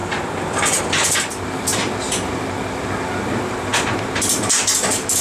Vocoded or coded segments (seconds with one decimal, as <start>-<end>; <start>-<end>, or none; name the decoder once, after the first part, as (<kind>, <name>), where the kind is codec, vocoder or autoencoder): 0.0-0.8 (vocoder, BigVGAN v2)